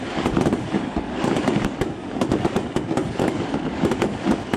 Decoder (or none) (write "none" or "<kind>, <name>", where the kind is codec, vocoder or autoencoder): codec, DAC